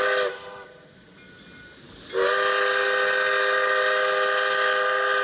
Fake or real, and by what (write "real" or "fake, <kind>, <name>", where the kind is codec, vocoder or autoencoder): real